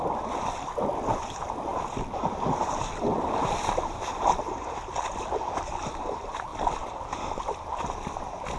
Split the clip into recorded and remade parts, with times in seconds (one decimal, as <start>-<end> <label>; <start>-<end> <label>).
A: 0.0-8.6 recorded